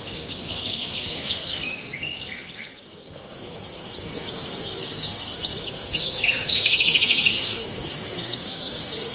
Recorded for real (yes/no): no